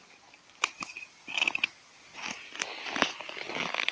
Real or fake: real